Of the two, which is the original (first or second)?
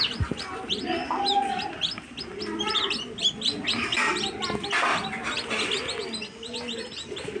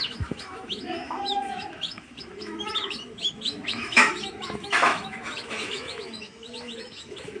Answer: first